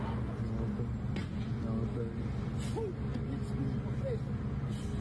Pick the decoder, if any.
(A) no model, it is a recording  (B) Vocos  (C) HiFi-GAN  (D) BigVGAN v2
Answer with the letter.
A